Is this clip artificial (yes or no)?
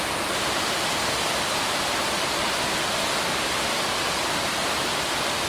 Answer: no